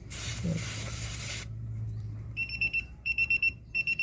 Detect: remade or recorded remade